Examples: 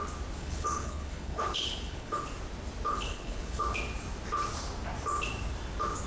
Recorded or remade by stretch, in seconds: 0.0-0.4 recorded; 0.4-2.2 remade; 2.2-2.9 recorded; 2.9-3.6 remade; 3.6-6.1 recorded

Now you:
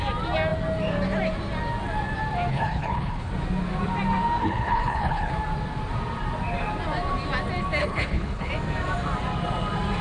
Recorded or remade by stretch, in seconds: 0.0-2.5 recorded; 2.5-3.3 remade; 3.3-4.4 recorded; 4.4-5.3 remade; 5.3-7.8 recorded; 7.8-8.5 remade; 8.5-10.0 recorded

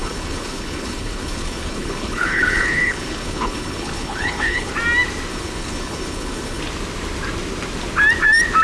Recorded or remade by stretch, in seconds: 0.0-4.7 remade; 4.7-5.3 recorded; 5.3-6.6 remade; 6.6-8.6 recorded

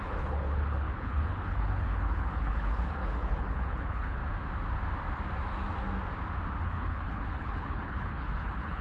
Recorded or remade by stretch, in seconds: 0.0-4.2 remade; 4.2-6.6 recorded; 6.6-8.8 remade

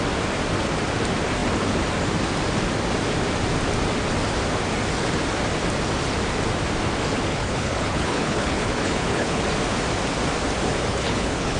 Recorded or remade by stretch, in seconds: 0.0-7.3 recorded; 7.3-9.4 remade; 9.4-10.9 recorded; 10.9-11.6 remade

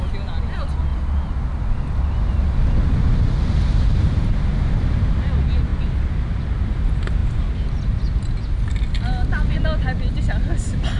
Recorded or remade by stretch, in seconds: 0.0-11.0 recorded